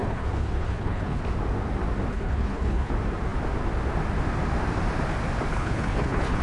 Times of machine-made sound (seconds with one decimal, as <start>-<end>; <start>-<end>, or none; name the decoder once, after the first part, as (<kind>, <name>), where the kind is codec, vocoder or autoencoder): 0.0-1.2 (codec, HILCodec); 2.1-2.9; 5.5-6.4